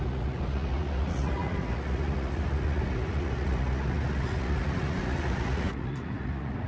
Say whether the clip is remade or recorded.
remade